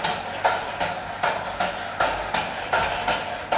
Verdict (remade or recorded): recorded